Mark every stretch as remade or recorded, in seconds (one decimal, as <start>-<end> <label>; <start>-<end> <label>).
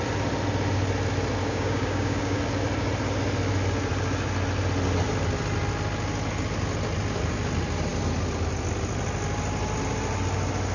0.0-1.4 recorded; 1.4-2.4 remade; 2.4-10.7 recorded